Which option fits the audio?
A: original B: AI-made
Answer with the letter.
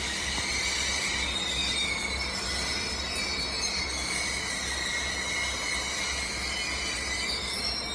A